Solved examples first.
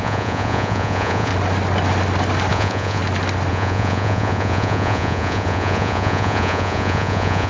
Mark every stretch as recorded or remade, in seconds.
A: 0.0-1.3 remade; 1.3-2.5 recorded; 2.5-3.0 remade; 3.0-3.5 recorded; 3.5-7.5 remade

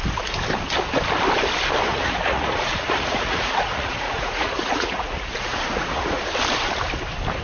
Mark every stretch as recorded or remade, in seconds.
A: 0.0-1.9 recorded; 1.9-6.2 remade; 6.2-7.4 recorded

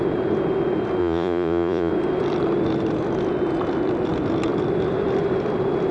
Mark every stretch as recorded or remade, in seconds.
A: 0.0-1.0 recorded; 1.0-1.9 remade; 1.9-5.9 recorded

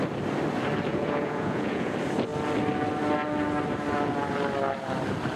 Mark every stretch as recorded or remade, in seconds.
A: 0.0-0.9 recorded; 0.9-1.9 remade; 1.9-5.4 recorded

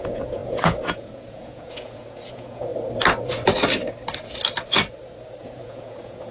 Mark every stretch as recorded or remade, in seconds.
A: 0.0-2.7 remade; 2.7-5.4 recorded; 5.4-6.3 remade

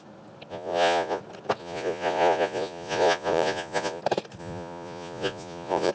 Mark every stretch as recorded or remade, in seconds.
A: 0.0-0.5 recorded; 0.5-1.2 remade; 1.2-1.6 recorded; 1.6-4.0 remade; 4.0-4.4 recorded; 4.4-5.9 remade

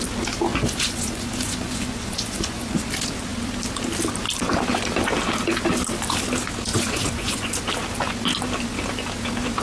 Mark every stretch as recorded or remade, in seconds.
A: 0.0-0.5 recorded; 0.5-2.8 remade; 2.8-6.7 recorded; 6.7-7.5 remade; 7.5-9.6 recorded

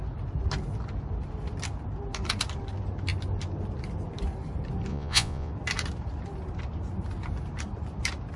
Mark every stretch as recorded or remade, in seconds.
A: 0.0-4.9 recorded; 4.9-5.5 remade; 5.5-8.4 recorded